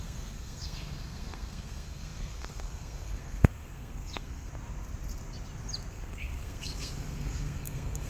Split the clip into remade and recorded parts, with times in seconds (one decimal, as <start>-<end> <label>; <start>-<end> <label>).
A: 0.0-4.5 remade; 4.5-5.9 recorded; 5.9-8.1 remade